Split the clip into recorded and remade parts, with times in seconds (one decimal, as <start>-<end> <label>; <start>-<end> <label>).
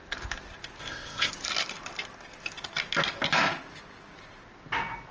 0.0-0.8 recorded; 0.8-1.3 remade; 1.3-5.1 recorded